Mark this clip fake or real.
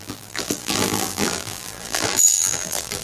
fake